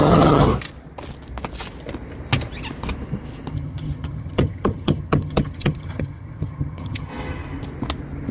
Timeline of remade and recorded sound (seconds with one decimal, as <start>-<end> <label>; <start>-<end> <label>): 0.0-0.5 remade; 0.5-3.5 recorded; 3.5-7.1 remade; 7.1-8.3 recorded